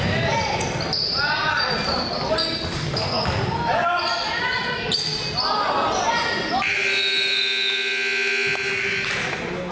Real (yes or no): yes